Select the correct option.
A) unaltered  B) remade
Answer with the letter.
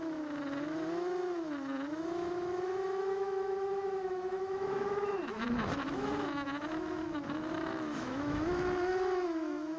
B